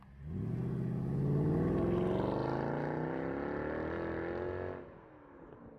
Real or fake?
real